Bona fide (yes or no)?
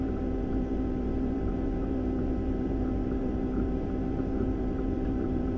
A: no